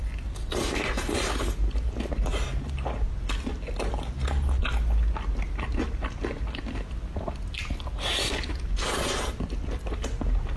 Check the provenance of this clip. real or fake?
real